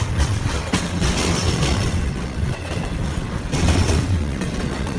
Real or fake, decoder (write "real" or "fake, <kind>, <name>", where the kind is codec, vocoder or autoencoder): fake, vocoder, WaveNeXt